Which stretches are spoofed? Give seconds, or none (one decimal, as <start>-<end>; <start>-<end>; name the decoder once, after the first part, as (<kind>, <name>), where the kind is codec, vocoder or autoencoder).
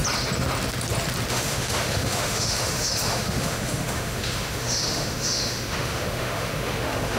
1.3-7.2 (autoencoder, DAC-VAE)